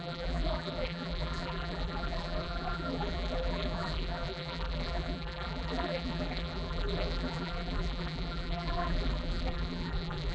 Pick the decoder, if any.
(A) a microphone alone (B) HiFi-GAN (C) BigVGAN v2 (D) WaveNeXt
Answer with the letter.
C